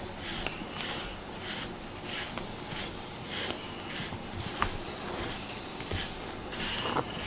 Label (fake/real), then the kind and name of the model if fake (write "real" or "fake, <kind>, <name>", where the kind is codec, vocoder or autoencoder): real